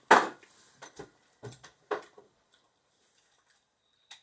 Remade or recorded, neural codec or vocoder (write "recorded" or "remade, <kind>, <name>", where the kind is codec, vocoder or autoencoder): recorded